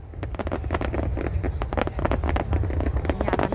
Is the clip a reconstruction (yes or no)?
yes